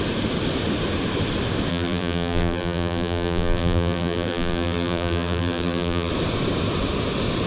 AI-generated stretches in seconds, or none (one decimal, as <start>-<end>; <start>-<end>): 1.7-6.1